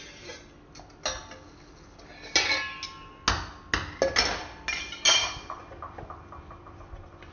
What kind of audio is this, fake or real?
real